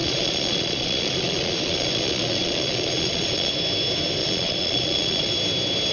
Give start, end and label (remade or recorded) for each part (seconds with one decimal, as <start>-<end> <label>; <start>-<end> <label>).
0.0-3.5 remade; 3.5-4.2 recorded; 4.2-5.3 remade; 5.3-5.9 recorded